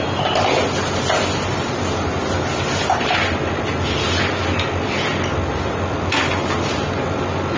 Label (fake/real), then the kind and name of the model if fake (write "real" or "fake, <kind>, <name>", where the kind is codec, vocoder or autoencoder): real